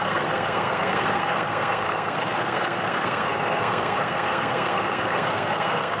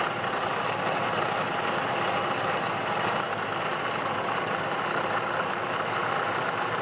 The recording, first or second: second